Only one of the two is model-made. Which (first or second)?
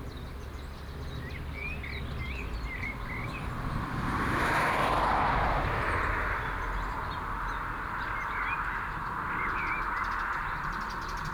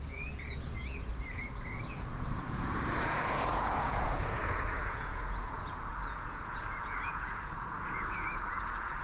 second